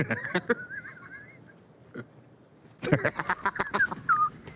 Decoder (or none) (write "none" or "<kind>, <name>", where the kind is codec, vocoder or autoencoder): none